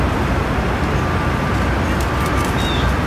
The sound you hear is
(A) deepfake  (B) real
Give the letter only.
B